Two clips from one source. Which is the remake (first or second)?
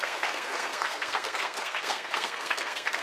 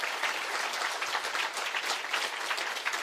first